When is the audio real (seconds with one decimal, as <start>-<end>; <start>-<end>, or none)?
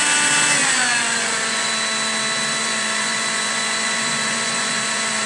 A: 0.0-0.6; 1.7-2.6